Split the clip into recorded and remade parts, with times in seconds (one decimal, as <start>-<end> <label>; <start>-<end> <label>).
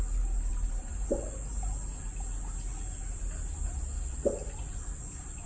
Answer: 0.0-5.5 recorded